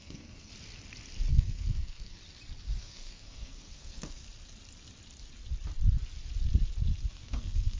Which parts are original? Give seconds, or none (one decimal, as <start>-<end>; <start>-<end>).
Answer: 0.5-1.3; 2.2-2.8; 4.2-7.1